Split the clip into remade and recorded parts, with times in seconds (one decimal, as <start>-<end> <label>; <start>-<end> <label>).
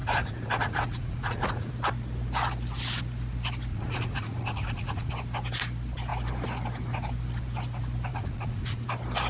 0.0-1.7 remade; 1.7-3.7 recorded; 3.7-5.1 remade; 5.1-8.1 recorded; 8.1-8.8 remade; 8.8-9.3 recorded